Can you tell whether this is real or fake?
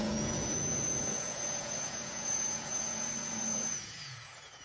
fake